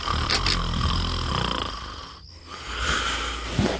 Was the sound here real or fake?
real